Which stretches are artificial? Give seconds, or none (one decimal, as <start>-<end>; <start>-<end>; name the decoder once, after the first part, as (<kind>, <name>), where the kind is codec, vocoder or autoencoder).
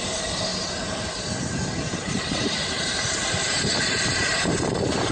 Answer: 0.5-3.6 (vocoder, BigVGAN v2); 4.3-5.1